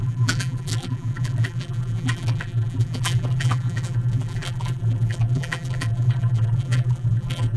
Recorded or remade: remade